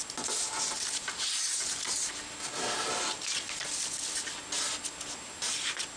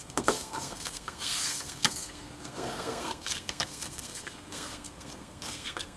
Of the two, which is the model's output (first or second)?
second